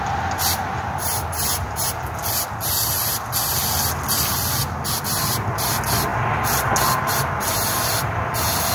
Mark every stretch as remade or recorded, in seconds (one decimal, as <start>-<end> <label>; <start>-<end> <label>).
0.0-8.7 recorded